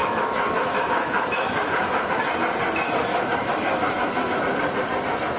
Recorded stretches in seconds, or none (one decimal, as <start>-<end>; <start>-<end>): 2.2-3.1; 4.4-5.4

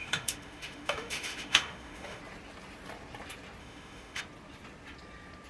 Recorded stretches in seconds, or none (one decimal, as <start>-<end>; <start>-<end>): 2.2-3.6; 4.2-5.5

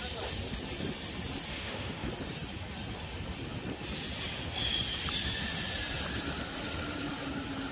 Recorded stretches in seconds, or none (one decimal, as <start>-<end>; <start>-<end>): 0.0-1.5; 2.1-7.7